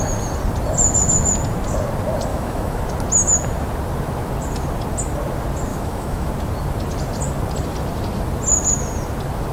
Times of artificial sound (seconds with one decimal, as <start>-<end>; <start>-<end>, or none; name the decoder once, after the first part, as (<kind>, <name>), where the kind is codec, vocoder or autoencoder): 2.3-2.8 (autoencoder, DAC-VAE); 5.7-6.3